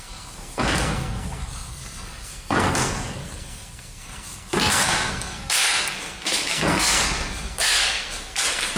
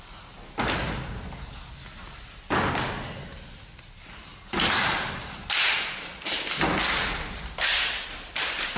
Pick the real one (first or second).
second